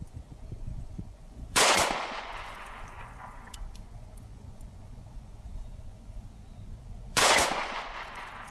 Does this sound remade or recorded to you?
remade